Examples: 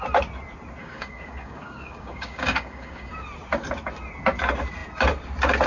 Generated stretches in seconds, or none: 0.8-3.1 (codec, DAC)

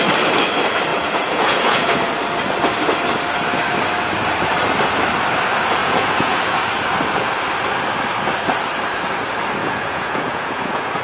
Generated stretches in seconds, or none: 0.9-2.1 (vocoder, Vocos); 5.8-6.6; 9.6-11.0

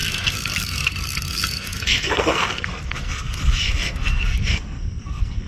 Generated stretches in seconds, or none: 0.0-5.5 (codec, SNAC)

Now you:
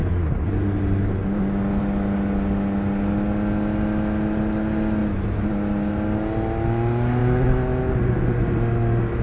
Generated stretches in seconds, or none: none

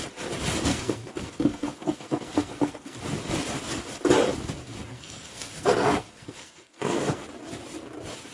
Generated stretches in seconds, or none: 0.7-3.0 (codec, SNAC); 4.9-7.2

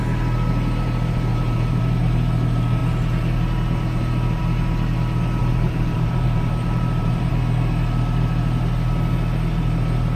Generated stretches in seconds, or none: 1.3-1.8 (vocoder, BigVGAN v2); 5.4-7.3